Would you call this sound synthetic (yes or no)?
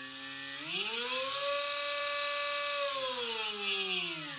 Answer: no